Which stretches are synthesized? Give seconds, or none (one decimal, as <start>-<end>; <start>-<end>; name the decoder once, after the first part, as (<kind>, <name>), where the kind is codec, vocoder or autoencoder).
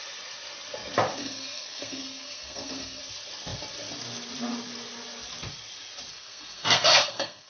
1.2-3.0 (codec, SNAC); 6.1-7.5